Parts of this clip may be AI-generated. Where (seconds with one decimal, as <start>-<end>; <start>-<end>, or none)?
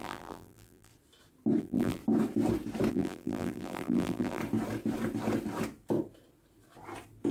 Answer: 0.0-0.9; 1.6-2.0; 2.9-4.4